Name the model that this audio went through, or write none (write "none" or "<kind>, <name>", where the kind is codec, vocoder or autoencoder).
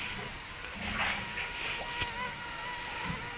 none